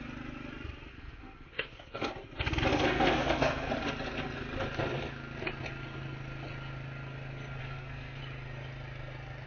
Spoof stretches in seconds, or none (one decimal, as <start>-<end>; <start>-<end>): 0.9-2.1; 2.7-3.7; 7.6-8.2